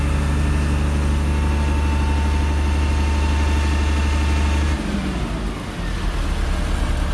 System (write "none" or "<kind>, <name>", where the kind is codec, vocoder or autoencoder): none